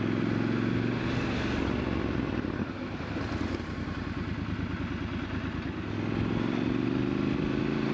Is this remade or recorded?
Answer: recorded